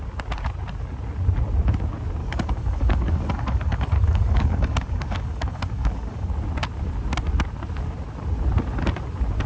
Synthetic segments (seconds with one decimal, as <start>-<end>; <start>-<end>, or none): 2.2-6.3